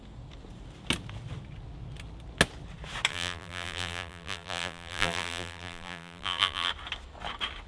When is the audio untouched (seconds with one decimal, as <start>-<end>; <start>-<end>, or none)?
0.0-3.1; 6.7-7.7